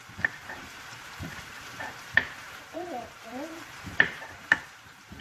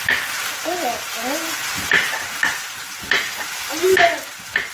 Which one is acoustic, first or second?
second